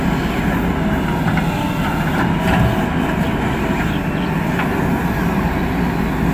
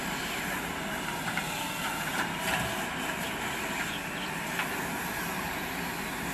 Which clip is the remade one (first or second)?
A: second